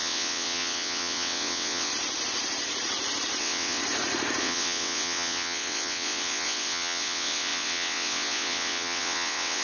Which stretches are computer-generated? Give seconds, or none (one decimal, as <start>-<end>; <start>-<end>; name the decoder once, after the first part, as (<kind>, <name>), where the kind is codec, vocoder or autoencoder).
0.0-1.9 (vocoder, WaveNeXt); 3.4-3.8; 4.4-9.6